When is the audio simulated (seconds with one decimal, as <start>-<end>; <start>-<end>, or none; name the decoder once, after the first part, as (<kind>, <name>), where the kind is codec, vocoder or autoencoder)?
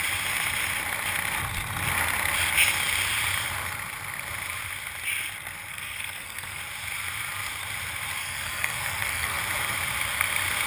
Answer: 5.7-6.6 (codec, SNAC); 8.2-9.4